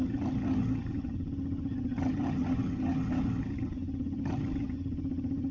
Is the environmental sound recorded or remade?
remade